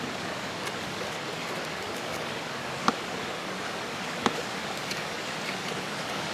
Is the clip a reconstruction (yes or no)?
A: yes